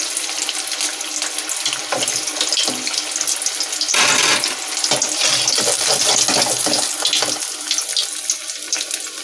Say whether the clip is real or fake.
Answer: real